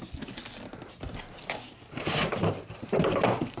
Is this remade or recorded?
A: recorded